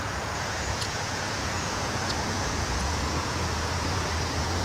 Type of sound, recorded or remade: remade